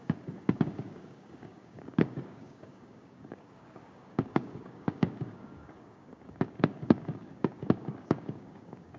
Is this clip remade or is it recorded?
remade